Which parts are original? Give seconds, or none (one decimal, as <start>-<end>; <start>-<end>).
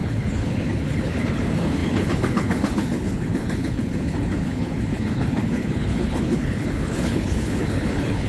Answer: none